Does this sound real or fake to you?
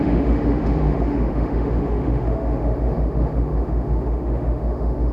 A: fake